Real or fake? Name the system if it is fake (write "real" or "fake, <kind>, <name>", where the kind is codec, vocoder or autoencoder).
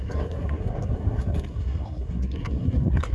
fake, codec, SNAC